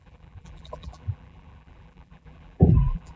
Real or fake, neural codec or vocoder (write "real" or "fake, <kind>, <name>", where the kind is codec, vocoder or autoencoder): fake, vocoder, BigVGAN v2